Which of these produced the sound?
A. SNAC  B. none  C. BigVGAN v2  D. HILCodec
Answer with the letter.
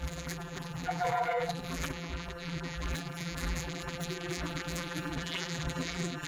C